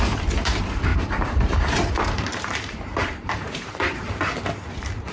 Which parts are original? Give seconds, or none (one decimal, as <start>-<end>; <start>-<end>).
0.0-0.9; 4.0-5.1